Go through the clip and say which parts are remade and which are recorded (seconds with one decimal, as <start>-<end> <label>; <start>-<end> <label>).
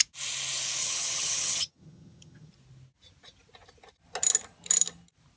0.0-0.8 recorded; 0.8-2.5 remade; 2.5-5.4 recorded